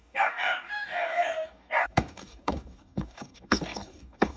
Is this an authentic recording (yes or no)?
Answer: no